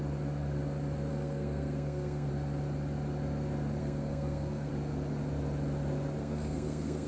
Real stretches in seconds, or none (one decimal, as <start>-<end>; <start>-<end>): 0.0-1.1; 2.3-3.8; 4.7-6.2